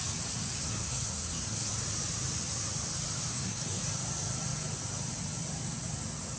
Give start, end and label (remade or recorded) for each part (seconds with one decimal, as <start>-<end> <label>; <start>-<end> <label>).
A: 0.0-0.6 recorded; 0.6-1.7 remade; 1.7-3.3 recorded; 3.3-3.8 remade; 3.8-6.4 recorded